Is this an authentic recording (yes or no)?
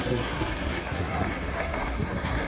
no